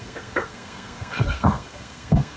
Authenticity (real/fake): fake